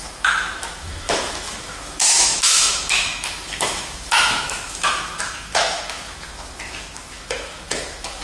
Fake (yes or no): yes